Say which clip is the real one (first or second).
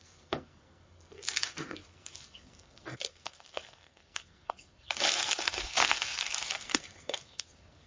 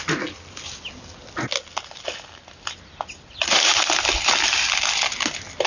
second